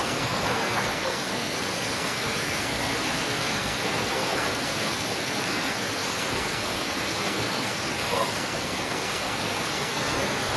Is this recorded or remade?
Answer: remade